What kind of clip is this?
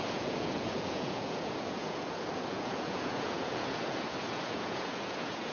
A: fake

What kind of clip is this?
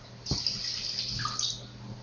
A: real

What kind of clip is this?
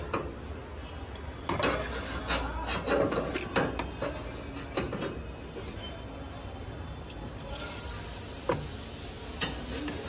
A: real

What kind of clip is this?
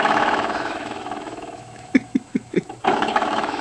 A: fake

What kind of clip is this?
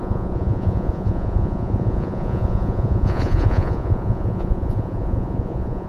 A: fake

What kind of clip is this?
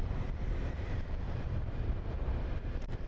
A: fake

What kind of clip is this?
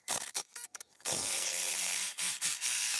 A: fake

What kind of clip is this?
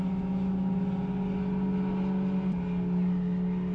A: real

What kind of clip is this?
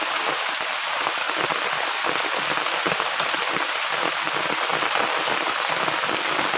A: real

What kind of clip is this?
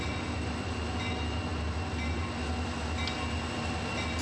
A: real